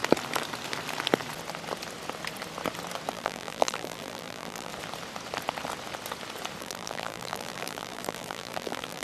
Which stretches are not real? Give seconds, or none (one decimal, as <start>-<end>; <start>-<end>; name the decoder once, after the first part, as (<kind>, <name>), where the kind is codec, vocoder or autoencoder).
3.1-4.7 (vocoder, BigVGAN v2); 6.6-9.0